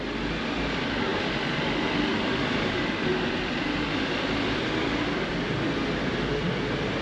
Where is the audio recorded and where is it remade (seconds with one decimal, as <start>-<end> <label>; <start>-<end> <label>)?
0.0-1.1 recorded; 1.1-5.3 remade; 5.3-7.0 recorded